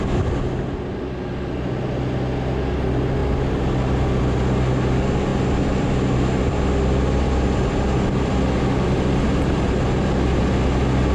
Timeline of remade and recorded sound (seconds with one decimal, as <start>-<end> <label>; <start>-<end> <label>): 0.0-11.1 recorded